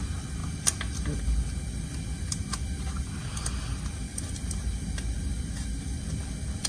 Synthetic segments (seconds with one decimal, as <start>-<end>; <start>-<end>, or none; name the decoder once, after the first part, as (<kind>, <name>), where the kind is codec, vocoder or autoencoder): none